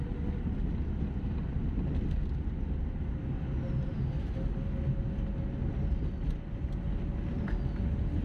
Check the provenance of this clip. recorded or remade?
recorded